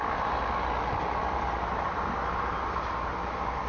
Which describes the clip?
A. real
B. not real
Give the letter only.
A